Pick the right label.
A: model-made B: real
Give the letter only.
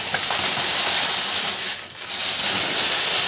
B